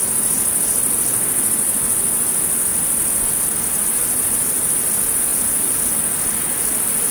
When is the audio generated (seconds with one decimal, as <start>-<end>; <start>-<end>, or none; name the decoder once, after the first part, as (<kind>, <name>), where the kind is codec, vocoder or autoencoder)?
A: 5.3-5.9 (vocoder, BigVGAN v2)